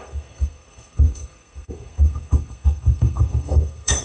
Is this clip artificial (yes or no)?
yes